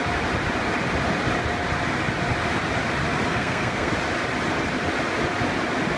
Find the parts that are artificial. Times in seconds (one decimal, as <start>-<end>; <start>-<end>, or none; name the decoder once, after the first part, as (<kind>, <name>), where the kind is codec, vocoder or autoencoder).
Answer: 3.3-3.9 (codec, SNAC)